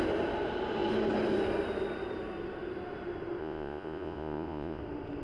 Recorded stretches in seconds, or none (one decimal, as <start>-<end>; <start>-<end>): 0.0-3.4; 4.8-5.2